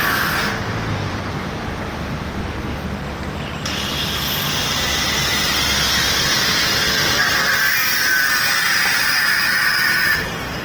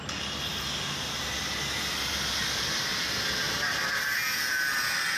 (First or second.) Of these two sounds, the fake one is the first